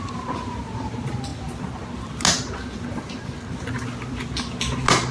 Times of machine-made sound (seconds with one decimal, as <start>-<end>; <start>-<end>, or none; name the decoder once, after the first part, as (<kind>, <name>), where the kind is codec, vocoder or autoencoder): none